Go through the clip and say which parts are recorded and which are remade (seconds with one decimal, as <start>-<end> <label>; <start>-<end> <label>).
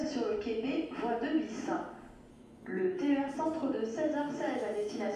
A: 0.0-2.3 recorded; 2.3-3.0 remade; 3.0-4.4 recorded; 4.4-5.2 remade